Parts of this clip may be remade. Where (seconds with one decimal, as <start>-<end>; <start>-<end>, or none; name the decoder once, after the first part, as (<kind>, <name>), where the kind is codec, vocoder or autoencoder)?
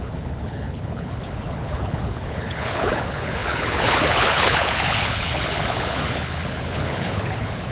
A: 0.0-7.7 (codec, HILCodec)